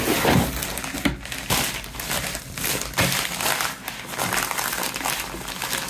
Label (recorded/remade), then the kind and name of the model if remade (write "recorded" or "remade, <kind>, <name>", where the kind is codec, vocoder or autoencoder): recorded